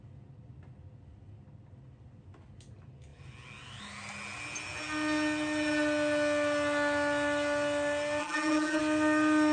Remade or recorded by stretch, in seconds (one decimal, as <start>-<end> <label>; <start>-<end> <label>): 0.0-8.2 recorded; 8.2-8.8 remade; 8.8-9.5 recorded